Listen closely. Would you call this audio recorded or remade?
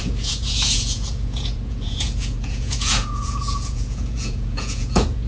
remade